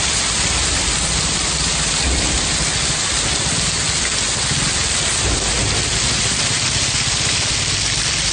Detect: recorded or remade recorded